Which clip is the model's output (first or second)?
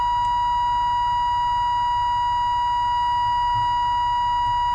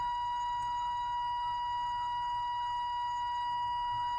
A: second